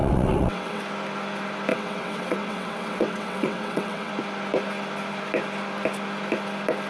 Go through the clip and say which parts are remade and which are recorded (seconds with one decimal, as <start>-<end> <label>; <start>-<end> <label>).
0.0-0.8 remade; 0.8-1.7 recorded; 1.7-4.1 remade; 4.1-6.9 recorded